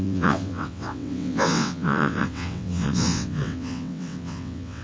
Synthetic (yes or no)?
yes